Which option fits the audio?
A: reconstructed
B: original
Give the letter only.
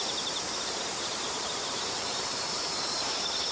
A